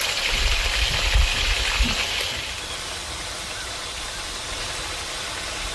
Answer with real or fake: real